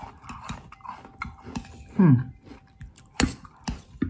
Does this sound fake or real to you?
real